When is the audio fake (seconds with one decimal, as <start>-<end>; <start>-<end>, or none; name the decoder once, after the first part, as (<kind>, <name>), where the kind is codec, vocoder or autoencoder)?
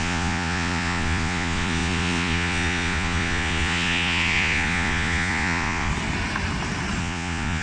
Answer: 0.0-5.9 (vocoder, Vocos); 7.0-7.6